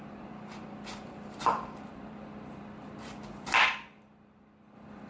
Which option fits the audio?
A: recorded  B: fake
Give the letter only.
B